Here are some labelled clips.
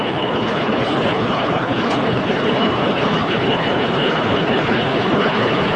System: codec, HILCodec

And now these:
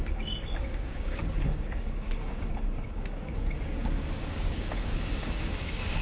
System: codec, DAC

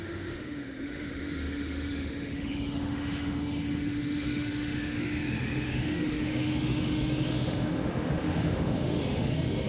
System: autoencoder, DAC-VAE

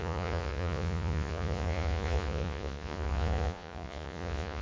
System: vocoder, Vocos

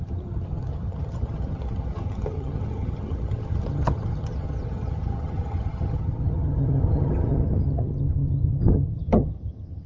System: vocoder, HiFi-GAN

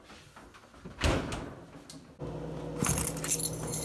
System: none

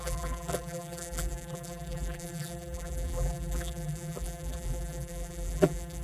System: vocoder, BigVGAN v2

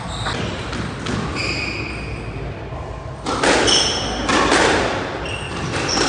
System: none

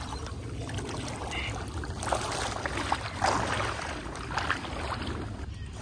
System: none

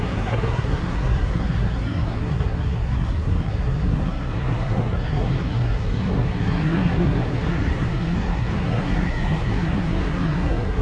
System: codec, SNAC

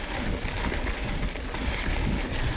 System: none